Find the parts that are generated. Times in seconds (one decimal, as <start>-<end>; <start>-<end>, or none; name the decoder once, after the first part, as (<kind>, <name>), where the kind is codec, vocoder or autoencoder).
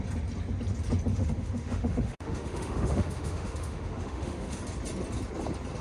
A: 1.1-4.6 (autoencoder, DAC-VAE)